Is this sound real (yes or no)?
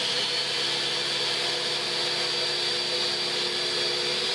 yes